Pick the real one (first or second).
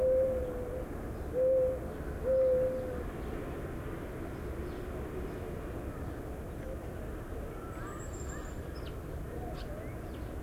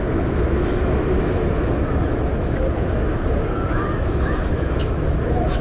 first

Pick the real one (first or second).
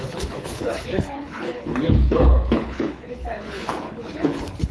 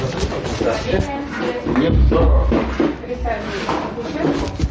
second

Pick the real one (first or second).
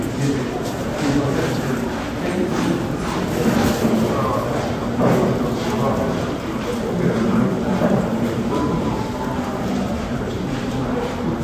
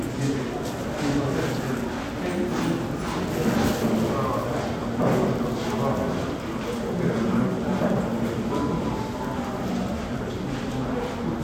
second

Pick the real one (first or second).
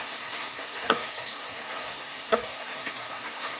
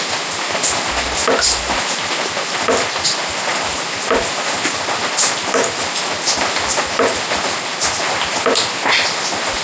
second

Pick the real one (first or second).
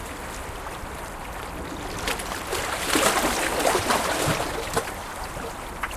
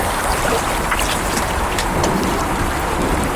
first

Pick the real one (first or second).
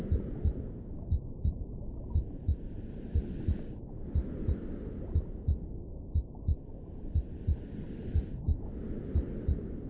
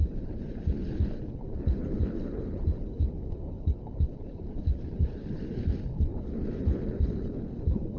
first